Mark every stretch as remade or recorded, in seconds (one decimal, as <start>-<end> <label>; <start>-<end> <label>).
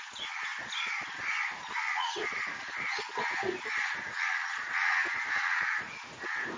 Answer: 0.0-0.5 remade; 0.5-1.4 recorded; 1.4-6.6 remade